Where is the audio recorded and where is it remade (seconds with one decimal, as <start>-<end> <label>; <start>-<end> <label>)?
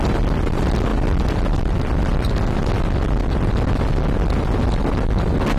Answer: 0.0-5.6 recorded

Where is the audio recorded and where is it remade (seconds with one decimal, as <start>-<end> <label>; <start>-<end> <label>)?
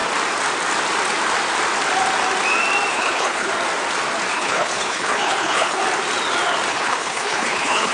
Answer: 0.0-2.9 recorded; 2.9-3.5 remade; 3.5-4.3 recorded; 4.3-5.8 remade; 5.8-6.7 recorded; 6.7-7.9 remade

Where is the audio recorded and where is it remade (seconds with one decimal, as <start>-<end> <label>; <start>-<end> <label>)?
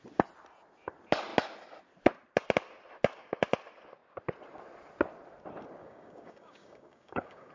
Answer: 0.0-5.8 recorded; 5.8-7.5 remade